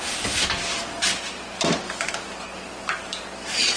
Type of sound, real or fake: real